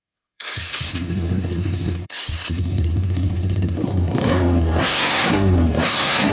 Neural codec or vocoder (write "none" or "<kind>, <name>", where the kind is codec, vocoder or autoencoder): codec, SNAC